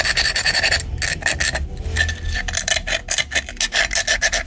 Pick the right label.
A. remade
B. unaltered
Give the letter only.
B